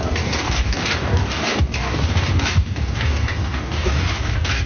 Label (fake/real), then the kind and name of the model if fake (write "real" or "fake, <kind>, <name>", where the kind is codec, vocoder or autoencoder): fake, codec, DAC